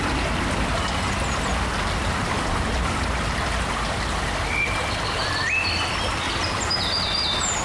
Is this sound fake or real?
real